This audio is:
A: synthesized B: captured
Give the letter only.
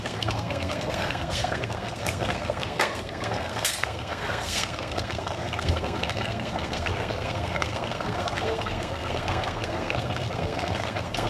A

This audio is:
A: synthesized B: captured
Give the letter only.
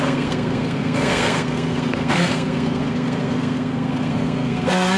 A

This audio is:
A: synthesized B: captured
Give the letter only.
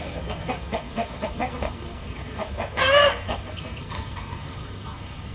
A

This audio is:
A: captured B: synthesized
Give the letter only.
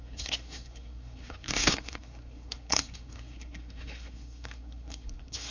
B